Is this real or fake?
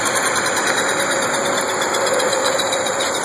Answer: real